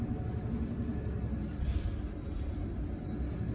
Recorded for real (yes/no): yes